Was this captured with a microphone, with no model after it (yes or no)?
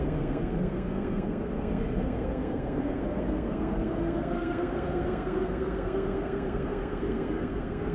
no